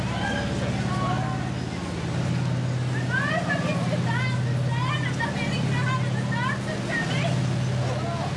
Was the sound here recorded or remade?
recorded